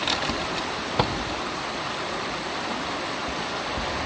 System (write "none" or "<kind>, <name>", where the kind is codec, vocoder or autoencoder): none